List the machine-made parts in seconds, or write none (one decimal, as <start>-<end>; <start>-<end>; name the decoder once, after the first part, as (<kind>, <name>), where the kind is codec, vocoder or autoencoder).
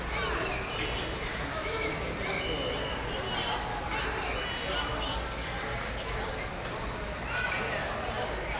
1.3-1.9 (autoencoder, DAC-VAE)